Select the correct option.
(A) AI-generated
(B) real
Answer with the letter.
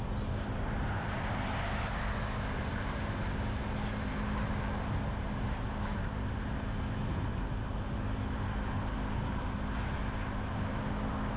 B